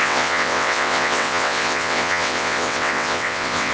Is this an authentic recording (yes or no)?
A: no